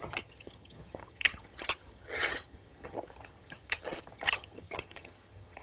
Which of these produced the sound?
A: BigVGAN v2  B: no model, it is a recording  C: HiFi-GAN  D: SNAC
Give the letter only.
C